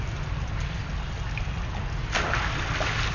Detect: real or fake real